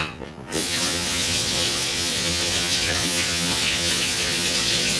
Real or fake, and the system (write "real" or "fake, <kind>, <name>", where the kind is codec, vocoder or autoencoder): fake, vocoder, Vocos